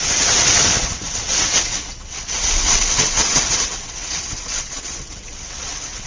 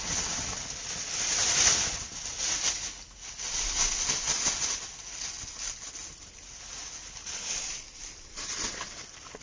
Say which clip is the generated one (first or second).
first